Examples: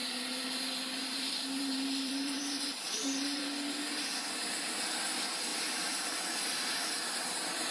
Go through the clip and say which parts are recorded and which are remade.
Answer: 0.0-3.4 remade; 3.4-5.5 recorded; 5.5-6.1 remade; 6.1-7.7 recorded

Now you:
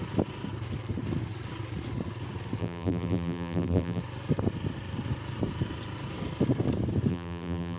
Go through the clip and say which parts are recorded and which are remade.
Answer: 0.0-2.6 recorded; 2.6-4.0 remade; 4.0-7.1 recorded; 7.1-7.8 remade

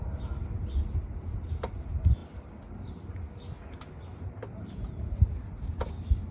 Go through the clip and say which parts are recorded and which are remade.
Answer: 0.0-6.3 recorded

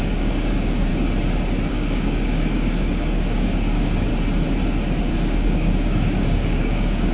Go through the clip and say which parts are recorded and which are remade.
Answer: 0.0-0.9 remade; 0.9-1.7 recorded; 1.7-4.1 remade; 4.1-5.1 recorded; 5.1-7.1 remade

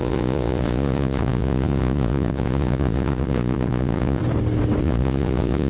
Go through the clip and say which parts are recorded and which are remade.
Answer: 0.0-4.2 remade; 4.2-4.8 recorded; 4.8-5.7 remade

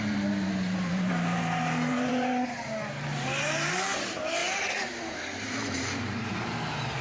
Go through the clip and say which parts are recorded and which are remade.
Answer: 0.0-7.0 remade

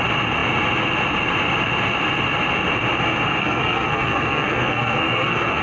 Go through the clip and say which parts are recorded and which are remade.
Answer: 0.0-3.4 recorded; 3.4-5.6 remade

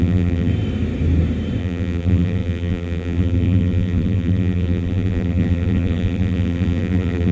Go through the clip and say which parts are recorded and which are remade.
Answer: 0.0-0.5 remade; 0.5-1.6 recorded; 1.6-7.3 remade